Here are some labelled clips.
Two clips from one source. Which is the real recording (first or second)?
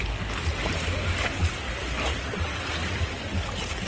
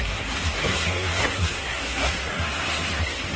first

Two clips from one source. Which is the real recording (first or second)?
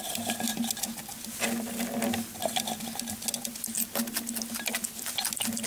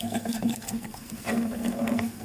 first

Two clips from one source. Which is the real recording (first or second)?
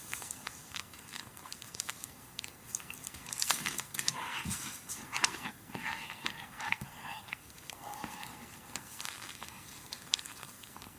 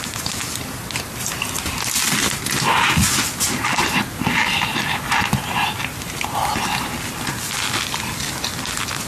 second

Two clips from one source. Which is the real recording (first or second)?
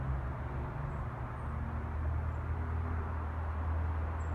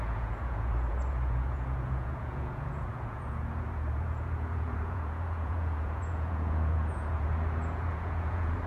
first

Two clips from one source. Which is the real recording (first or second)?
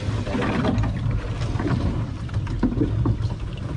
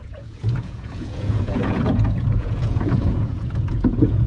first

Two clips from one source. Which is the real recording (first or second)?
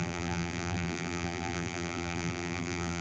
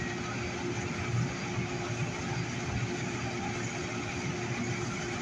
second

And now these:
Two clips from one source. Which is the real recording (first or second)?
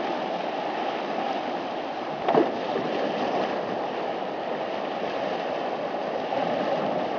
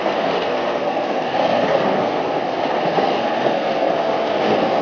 first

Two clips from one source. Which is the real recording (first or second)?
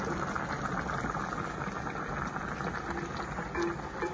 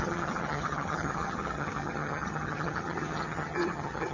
first